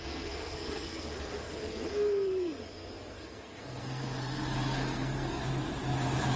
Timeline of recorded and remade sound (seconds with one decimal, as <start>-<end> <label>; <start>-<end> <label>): 0.0-2.6 remade; 2.6-3.1 recorded; 3.1-5.4 remade; 5.4-6.4 recorded